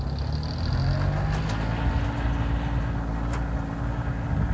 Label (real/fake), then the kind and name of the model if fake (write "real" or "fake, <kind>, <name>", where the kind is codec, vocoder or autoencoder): real